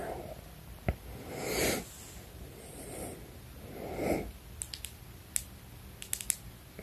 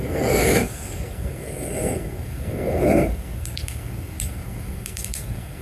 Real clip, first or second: first